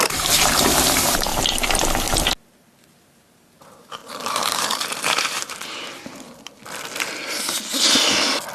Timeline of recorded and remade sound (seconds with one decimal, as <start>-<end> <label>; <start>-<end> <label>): 0.0-1.3 remade; 1.3-2.8 recorded; 2.8-6.6 remade; 6.6-8.5 recorded